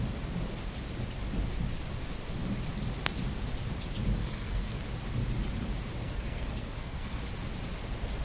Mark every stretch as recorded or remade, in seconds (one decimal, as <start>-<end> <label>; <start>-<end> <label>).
0.0-4.2 recorded; 4.2-4.8 remade; 4.8-6.0 recorded; 6.0-7.2 remade; 7.2-8.2 recorded